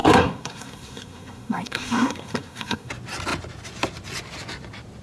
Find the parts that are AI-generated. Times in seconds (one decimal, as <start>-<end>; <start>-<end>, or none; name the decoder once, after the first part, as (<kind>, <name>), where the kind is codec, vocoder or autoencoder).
0.0-2.9 (codec, SNAC)

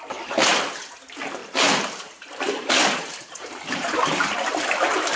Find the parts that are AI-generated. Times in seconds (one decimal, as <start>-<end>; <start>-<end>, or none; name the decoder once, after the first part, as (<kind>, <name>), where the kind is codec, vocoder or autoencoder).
1.4-4.5 (vocoder, BigVGAN v2)